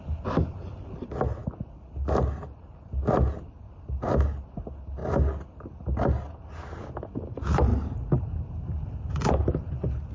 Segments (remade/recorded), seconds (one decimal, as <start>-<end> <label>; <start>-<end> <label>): 0.0-10.1 recorded